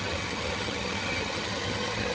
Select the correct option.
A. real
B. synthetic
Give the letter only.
B